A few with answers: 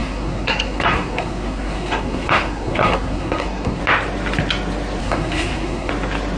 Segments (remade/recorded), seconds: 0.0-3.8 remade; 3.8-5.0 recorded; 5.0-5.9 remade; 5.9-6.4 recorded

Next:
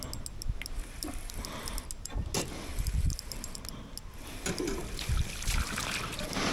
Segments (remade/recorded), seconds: 0.0-6.5 recorded

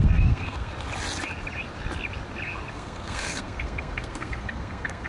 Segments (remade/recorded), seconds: 0.0-0.7 remade; 0.7-2.7 recorded; 2.7-5.1 remade

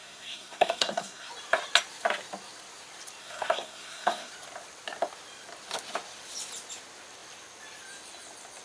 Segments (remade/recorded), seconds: 0.0-1.3 remade; 1.3-3.2 recorded; 3.2-4.3 remade; 4.3-8.6 recorded